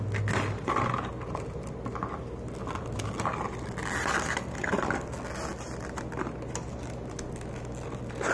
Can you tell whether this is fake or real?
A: real